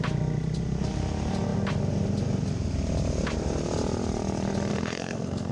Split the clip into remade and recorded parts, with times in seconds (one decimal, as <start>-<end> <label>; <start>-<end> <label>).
0.0-4.7 recorded; 4.7-5.5 remade

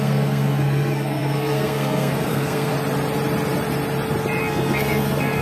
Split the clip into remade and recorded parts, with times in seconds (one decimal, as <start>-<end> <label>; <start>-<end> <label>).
0.0-2.7 remade; 2.7-4.4 recorded; 4.4-5.4 remade

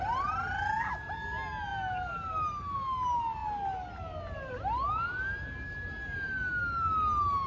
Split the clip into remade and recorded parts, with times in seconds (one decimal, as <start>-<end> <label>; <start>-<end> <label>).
0.0-7.5 recorded

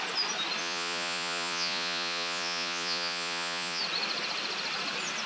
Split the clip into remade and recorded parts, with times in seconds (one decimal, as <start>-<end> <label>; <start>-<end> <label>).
0.0-0.6 recorded; 0.6-3.8 remade; 3.8-5.3 recorded

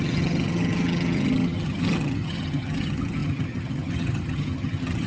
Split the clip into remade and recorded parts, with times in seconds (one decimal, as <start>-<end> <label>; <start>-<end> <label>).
0.0-5.1 remade

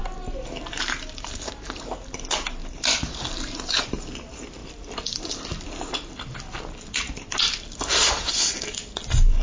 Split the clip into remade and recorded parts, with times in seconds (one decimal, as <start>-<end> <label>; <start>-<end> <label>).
0.0-2.6 recorded; 2.6-4.0 remade; 4.0-4.6 recorded; 4.6-8.3 remade; 8.3-9.4 recorded

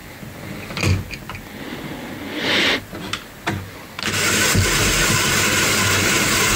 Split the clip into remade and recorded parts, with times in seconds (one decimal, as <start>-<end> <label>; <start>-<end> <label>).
0.0-4.0 recorded; 4.0-6.6 remade